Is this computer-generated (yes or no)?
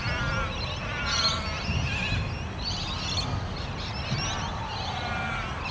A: no